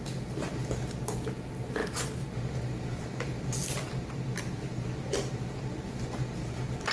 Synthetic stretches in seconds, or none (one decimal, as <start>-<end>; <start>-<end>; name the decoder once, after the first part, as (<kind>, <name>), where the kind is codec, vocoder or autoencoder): none